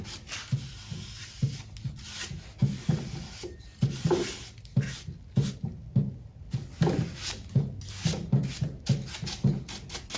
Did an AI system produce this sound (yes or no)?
no